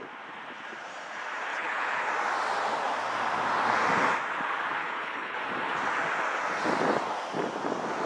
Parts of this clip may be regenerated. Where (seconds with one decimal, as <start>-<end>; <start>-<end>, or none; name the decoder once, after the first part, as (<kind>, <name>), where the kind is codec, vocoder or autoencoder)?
1.5-2.1 (codec, HILCodec); 4.8-5.4